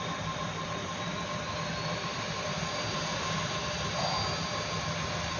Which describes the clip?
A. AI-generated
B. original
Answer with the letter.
B